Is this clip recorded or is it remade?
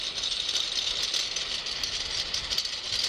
recorded